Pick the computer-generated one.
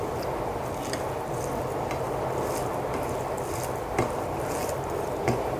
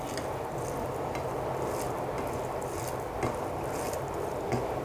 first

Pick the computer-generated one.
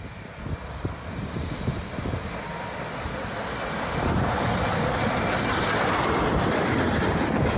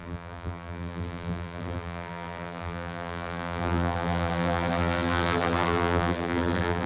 second